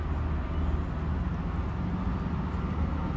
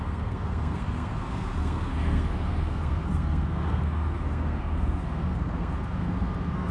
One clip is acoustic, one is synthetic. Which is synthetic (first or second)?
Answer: second